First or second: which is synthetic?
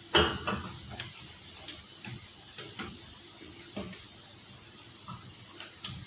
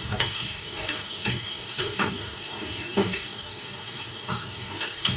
second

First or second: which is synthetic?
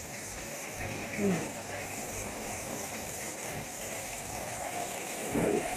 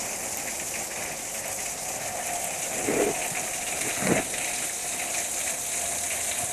first